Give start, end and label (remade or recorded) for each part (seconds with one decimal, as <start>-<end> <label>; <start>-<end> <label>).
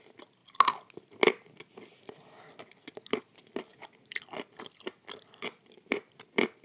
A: 0.0-3.7 recorded; 3.7-6.6 remade